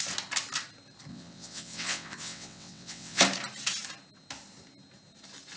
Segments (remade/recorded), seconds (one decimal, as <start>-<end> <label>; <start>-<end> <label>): 0.0-1.1 recorded; 1.1-3.2 remade; 3.2-5.6 recorded